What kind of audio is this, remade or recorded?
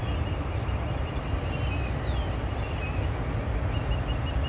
recorded